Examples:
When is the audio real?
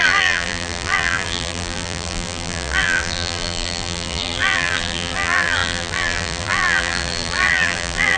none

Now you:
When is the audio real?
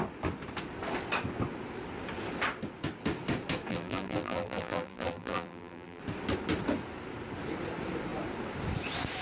0.0-3.7; 6.0-9.2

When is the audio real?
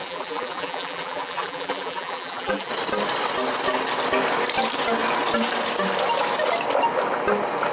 2.7-7.7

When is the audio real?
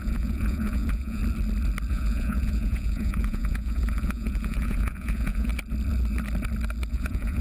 1.2-1.9; 5.5-6.9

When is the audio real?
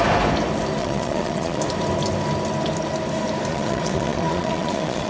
0.0-0.8; 1.6-3.5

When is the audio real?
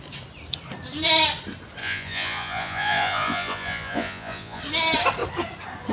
0.0-1.8; 4.6-5.9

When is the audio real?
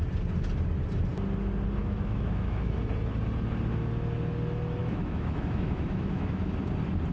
0.0-1.8; 2.8-4.8; 6.5-7.1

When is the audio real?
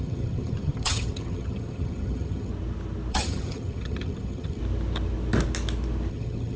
2.5-3.1; 4.6-6.1